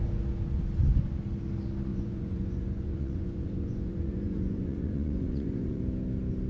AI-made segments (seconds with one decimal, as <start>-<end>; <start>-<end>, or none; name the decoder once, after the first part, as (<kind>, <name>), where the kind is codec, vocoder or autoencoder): 1.9-5.8 (vocoder, Vocos)